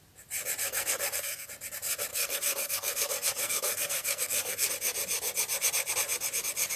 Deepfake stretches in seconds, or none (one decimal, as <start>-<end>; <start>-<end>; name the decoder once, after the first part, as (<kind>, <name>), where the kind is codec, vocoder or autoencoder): 0.6-1.5 (codec, SNAC); 2.1-4.7